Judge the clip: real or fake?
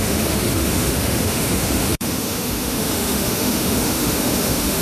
fake